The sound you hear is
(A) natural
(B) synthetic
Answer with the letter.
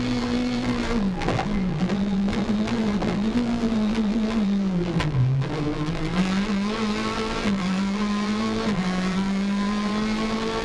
B